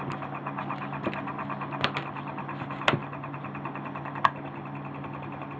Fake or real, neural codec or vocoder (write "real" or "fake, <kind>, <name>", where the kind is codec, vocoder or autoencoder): real